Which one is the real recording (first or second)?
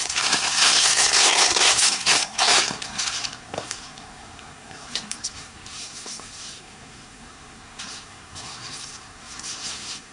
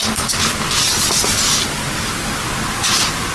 second